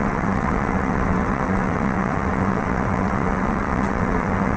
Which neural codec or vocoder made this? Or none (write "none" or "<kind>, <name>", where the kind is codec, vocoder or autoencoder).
vocoder, WaveNeXt